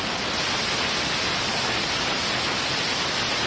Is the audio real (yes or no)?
yes